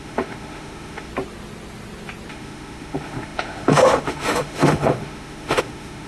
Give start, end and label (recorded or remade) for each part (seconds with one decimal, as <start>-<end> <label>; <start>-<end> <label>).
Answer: 0.0-1.1 remade; 1.1-2.3 recorded; 2.3-6.1 remade